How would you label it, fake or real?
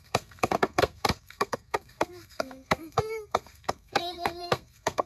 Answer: fake